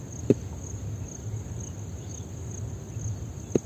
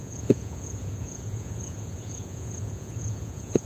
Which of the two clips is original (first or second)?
first